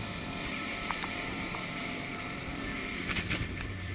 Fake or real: fake